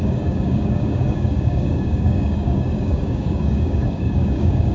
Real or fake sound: fake